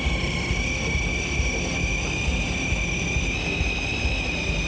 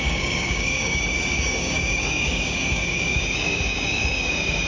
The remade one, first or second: second